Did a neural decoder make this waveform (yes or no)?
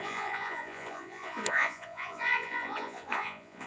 yes